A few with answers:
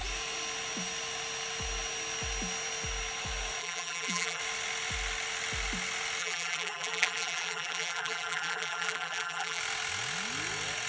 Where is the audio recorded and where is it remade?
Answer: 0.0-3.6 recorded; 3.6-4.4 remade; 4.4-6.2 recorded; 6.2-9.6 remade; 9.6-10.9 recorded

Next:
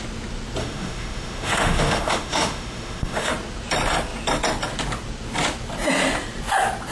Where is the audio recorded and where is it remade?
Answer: 0.0-0.6 recorded; 0.6-3.3 remade; 3.3-6.9 recorded

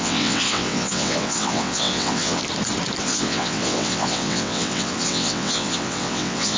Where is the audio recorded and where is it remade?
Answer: 0.0-2.4 remade; 2.4-3.0 recorded; 3.0-6.6 remade

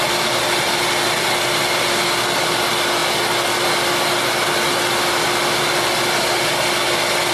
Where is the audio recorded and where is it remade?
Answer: 0.0-7.3 recorded

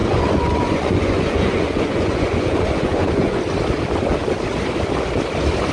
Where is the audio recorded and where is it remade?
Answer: 0.0-3.4 remade; 3.4-5.7 recorded